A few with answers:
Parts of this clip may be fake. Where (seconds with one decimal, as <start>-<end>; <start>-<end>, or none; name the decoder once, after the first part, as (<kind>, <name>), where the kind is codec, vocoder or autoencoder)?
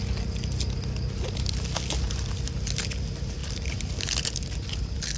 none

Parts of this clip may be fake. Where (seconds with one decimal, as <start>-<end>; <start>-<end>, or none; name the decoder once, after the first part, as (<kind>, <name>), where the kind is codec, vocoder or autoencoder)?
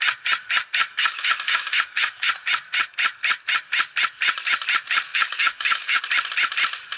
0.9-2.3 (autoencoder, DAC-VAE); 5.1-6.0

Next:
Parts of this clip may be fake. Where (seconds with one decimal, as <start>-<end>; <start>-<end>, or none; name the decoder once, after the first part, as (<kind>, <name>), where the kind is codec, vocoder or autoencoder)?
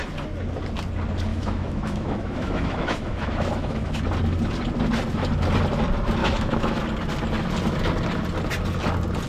1.3-4.0 (autoencoder, DAC-VAE); 6.2-6.8